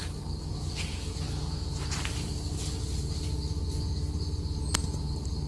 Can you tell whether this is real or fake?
real